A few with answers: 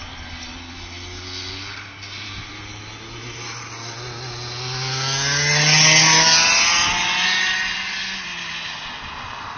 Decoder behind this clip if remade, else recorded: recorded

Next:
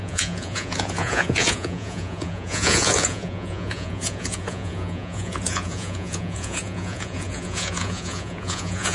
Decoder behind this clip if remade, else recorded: remade, vocoder, Vocos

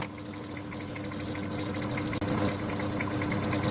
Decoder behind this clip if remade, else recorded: recorded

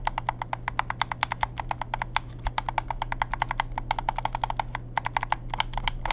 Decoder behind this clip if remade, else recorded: recorded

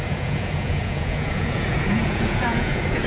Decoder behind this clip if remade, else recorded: remade, vocoder, Vocos